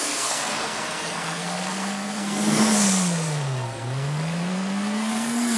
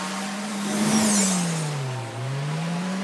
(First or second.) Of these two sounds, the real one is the second